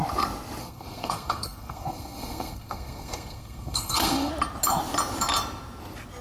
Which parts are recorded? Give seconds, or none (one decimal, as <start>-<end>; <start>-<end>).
0.0-0.6; 4.3-6.2